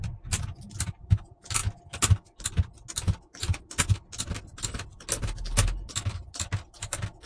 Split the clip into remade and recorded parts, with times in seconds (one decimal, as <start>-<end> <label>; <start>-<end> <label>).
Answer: 0.0-7.3 recorded